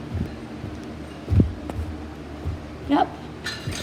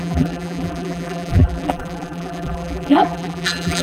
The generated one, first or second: second